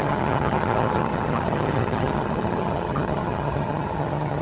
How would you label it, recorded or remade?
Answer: remade